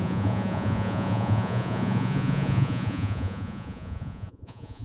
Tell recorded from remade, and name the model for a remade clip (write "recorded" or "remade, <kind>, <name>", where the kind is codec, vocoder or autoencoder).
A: remade, vocoder, Vocos